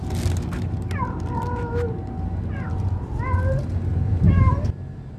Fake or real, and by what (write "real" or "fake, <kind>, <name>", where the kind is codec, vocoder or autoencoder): real